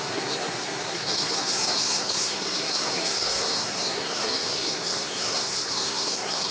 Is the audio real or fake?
fake